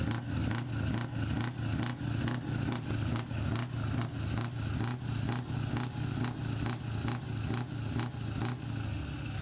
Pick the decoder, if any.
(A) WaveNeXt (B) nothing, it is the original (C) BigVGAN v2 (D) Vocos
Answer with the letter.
B